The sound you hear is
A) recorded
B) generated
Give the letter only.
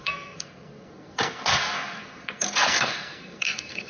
B